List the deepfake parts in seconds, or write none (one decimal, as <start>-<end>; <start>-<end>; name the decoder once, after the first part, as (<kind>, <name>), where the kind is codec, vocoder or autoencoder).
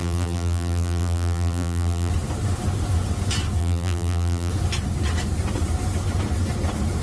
0.0-2.1 (vocoder, BigVGAN v2); 3.6-4.5